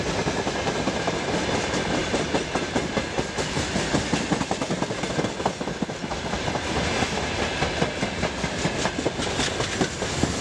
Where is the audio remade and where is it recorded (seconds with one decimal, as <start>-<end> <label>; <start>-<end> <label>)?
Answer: 0.0-10.4 recorded